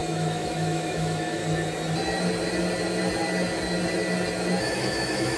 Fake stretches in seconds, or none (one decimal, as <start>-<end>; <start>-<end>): 0.0-1.4; 4.6-5.4